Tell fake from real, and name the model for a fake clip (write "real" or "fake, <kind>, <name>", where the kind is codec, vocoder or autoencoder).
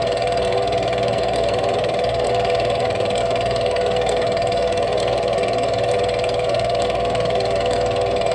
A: fake, codec, SNAC